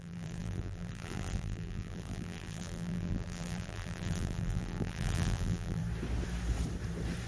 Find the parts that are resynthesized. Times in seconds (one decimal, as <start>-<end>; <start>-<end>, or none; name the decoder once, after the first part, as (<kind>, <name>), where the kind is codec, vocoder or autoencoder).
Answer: 0.0-5.8 (vocoder, BigVGAN v2)